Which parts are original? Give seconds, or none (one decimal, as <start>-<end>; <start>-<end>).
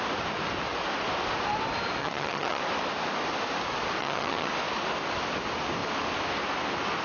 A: 0.0-2.0; 2.6-4.0; 4.5-7.0